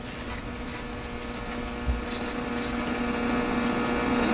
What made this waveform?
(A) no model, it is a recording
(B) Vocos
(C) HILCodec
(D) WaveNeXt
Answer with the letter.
A